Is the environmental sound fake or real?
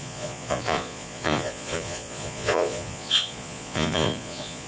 fake